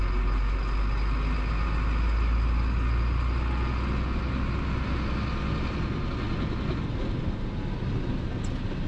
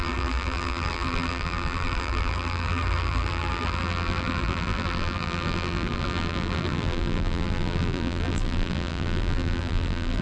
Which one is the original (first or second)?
first